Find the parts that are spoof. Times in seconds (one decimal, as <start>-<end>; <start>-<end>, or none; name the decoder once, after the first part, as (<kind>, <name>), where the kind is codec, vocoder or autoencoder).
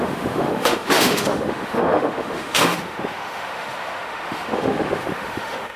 0.0-5.8 (autoencoder, DAC-VAE)